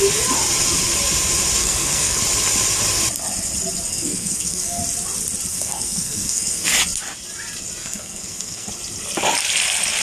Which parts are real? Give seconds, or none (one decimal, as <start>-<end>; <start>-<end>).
0.0-1.6; 2.2-3.9; 4.8-5.5; 6.7-7.8; 8.7-10.0